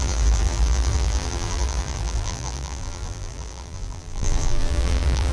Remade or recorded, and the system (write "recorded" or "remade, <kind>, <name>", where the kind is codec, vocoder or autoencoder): remade, vocoder, BigVGAN v2